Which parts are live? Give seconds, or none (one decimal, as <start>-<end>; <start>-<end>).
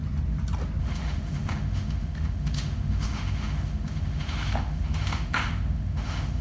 0.0-0.8